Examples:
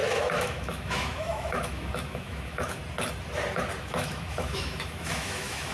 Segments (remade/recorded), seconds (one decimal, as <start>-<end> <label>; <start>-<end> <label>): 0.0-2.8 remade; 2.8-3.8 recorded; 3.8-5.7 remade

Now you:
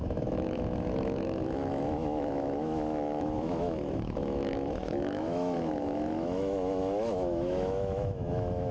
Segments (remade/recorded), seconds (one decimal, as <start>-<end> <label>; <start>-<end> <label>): 0.0-8.7 remade

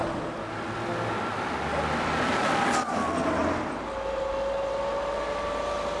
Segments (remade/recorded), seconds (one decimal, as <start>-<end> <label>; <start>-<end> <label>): 0.0-6.0 recorded

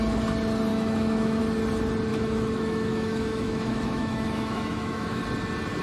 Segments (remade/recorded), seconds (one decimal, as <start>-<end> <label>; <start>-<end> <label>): 0.0-0.7 recorded; 0.7-1.4 remade; 1.4-2.1 recorded; 2.1-5.2 remade; 5.2-5.8 recorded